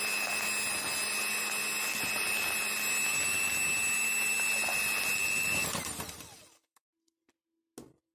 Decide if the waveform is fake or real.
real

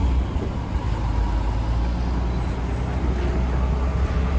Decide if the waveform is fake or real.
real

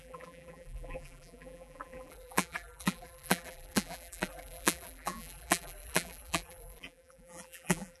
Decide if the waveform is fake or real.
fake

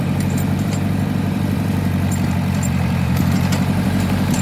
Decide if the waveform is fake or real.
fake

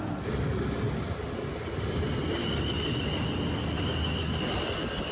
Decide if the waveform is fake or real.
real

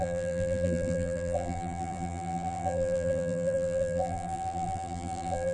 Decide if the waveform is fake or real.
fake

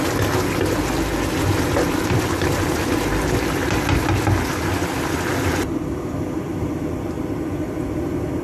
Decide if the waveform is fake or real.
real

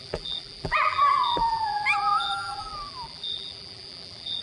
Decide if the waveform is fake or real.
fake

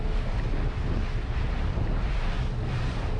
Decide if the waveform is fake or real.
real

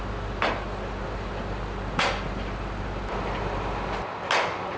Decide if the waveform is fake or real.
real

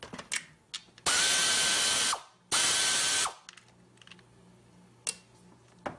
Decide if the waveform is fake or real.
real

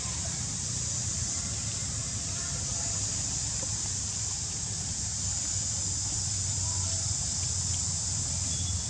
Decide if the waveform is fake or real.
fake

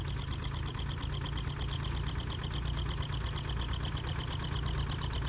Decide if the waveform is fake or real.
real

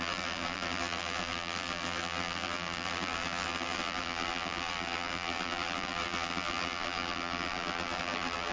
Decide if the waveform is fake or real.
fake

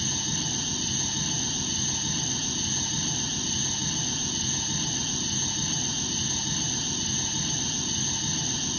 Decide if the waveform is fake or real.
real